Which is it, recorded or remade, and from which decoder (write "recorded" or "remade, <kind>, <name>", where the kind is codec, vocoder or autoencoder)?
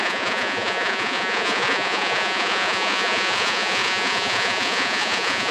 remade, vocoder, Vocos